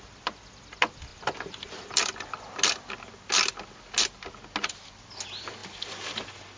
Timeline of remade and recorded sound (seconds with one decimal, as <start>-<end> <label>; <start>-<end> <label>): 0.0-6.6 recorded